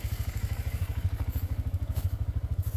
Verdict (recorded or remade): remade